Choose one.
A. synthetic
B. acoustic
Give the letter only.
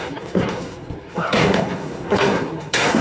A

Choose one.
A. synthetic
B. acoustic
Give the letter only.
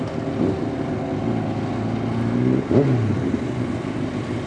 B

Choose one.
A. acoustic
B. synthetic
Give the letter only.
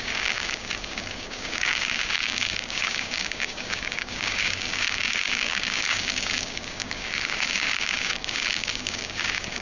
B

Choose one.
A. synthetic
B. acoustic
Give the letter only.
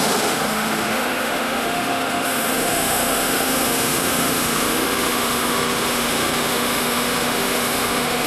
A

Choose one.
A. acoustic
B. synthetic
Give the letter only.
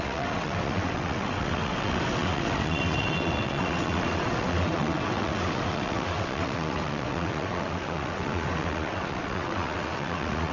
B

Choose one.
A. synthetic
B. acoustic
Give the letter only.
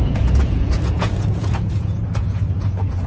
A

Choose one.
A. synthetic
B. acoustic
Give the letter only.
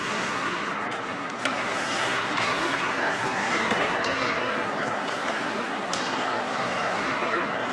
A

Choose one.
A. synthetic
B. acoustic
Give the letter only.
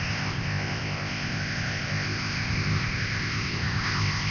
A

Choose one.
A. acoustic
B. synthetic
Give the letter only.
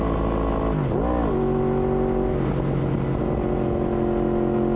A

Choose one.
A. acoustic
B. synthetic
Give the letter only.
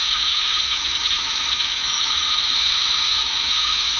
B